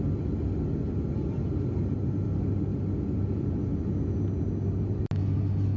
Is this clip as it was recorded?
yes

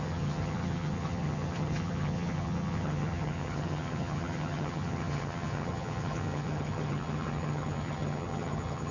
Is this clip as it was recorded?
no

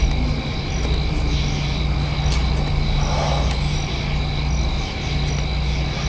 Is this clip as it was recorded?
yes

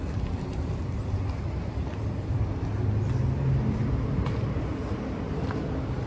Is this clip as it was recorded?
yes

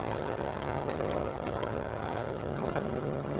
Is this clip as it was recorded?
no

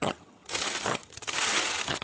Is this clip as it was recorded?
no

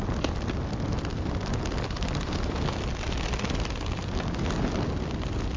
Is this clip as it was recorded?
yes